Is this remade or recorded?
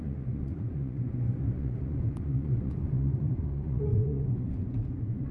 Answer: remade